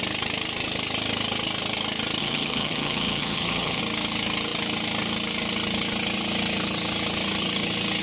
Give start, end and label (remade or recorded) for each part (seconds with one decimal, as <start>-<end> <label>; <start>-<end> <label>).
0.0-2.2 recorded; 2.2-3.8 remade; 3.8-8.0 recorded